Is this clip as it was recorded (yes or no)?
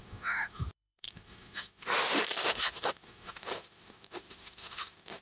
no